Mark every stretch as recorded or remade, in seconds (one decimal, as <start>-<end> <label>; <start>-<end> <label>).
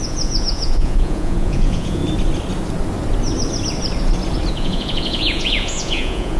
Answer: 0.0-2.0 remade; 2.0-4.5 recorded; 4.5-6.4 remade